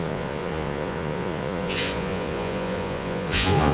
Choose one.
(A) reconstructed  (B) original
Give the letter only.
A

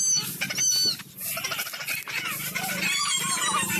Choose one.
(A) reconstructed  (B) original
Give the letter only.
B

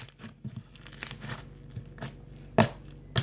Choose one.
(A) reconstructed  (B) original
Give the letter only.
B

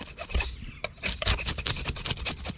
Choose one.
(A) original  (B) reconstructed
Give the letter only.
A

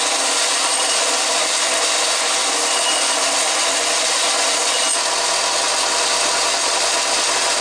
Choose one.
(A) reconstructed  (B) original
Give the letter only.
B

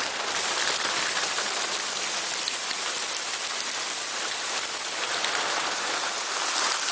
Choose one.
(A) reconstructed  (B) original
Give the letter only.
B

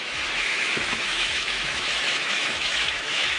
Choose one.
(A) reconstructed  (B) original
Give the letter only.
A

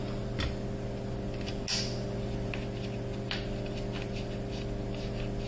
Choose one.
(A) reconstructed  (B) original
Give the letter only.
B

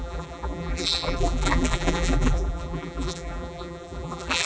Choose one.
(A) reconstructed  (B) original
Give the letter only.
A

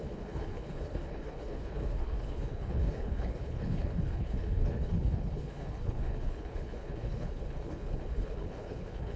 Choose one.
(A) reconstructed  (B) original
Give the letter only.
A